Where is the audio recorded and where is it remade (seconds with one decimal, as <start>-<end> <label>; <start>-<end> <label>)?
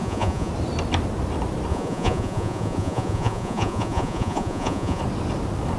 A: 0.0-0.5 remade; 0.5-1.7 recorded; 1.7-5.0 remade; 5.0-5.8 recorded